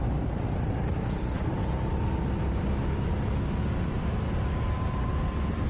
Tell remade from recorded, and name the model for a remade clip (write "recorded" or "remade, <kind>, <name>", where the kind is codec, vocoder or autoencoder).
recorded